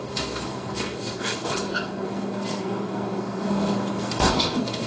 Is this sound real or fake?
fake